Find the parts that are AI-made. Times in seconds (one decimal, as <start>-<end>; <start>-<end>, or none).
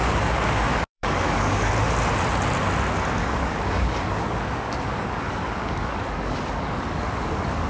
0.0-1.7; 3.2-7.7